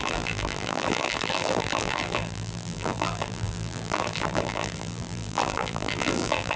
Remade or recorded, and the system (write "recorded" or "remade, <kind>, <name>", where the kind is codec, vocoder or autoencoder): remade, vocoder, BigVGAN v2